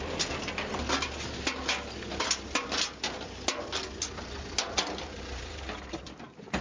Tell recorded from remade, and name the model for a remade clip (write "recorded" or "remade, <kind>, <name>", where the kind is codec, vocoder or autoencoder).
recorded